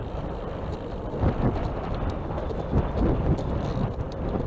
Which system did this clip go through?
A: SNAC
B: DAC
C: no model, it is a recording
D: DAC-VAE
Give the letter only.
C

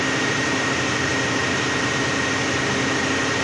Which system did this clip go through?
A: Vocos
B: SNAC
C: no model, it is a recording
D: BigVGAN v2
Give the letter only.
C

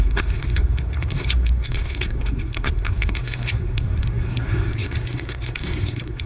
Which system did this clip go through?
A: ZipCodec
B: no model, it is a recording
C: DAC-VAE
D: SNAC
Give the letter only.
D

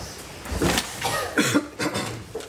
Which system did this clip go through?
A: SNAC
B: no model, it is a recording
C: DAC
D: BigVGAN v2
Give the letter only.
B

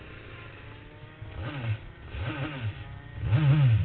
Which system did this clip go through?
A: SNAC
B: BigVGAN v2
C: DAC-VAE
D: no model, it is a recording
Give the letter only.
D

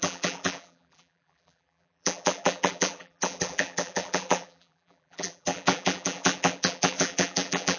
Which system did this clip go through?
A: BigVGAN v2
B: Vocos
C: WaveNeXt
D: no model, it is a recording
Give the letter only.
A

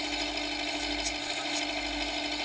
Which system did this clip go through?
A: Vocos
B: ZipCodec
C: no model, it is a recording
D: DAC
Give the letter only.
C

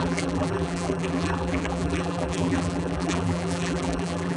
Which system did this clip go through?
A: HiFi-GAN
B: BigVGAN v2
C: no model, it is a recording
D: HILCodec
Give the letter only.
B